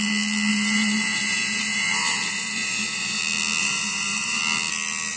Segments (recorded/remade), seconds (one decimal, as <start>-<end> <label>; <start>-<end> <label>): 0.0-0.5 recorded; 0.5-3.2 remade; 3.2-3.6 recorded; 3.6-4.4 remade; 4.4-5.2 recorded